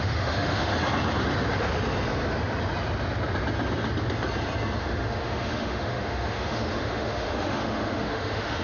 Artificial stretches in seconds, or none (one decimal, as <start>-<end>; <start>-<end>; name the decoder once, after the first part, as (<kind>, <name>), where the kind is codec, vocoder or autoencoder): 0.0-0.7 (autoencoder, DAC-VAE); 4.8-8.6